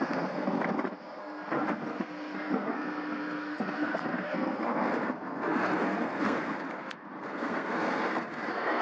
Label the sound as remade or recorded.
remade